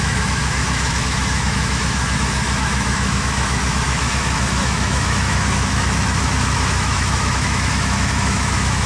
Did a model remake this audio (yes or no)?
yes